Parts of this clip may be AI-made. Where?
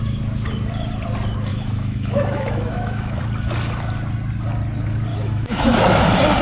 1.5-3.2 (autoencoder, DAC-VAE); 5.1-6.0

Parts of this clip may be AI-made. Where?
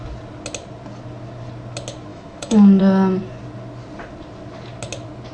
2.1-2.8 (autoencoder, DAC-VAE)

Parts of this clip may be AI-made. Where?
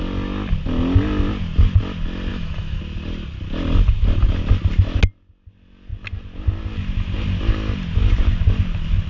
2.3-2.8 (autoencoder, DAC-VAE)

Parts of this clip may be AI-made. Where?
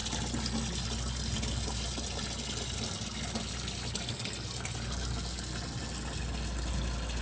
none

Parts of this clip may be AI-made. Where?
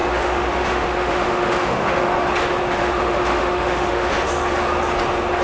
0.0-2.1 (autoencoder, DAC-VAE); 2.8-4.3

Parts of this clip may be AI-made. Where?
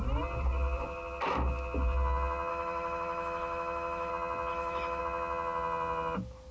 2.5-4.1 (autoencoder, DAC-VAE); 4.5-5.0